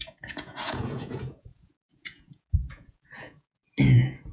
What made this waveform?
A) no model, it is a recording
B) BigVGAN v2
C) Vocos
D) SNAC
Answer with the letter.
C